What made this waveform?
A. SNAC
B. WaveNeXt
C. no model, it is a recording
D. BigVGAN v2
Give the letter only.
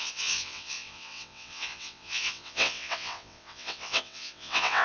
B